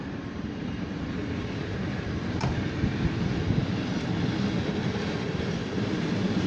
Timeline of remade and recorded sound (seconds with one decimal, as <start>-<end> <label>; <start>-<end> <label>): 0.0-3.6 remade; 3.6-4.7 recorded; 4.7-6.5 remade